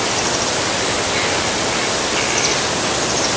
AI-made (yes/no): no